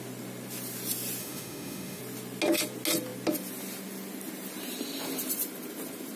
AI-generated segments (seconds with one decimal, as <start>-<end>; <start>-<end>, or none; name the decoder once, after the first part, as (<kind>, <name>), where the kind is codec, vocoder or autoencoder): 1.2-2.0 (autoencoder, DAC-VAE)